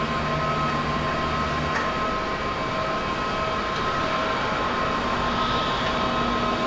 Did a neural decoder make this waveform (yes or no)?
no